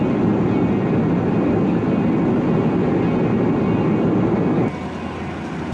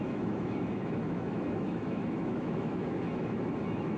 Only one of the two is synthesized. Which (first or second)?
second